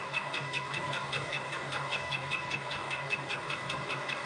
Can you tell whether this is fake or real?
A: fake